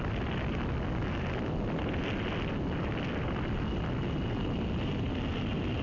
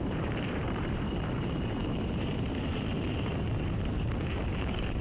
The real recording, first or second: first